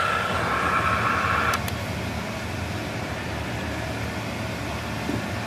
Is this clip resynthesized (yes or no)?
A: no